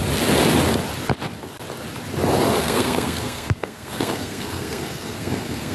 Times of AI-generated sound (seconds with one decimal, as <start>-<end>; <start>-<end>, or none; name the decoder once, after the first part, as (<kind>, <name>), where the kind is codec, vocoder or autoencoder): 2.6-5.7 (codec, SNAC)